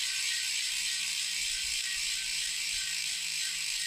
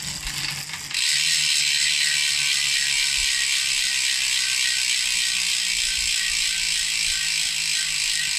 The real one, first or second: second